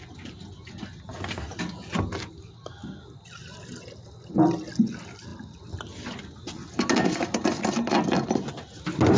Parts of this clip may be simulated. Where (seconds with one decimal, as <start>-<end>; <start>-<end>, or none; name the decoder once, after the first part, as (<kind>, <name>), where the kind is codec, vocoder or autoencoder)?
none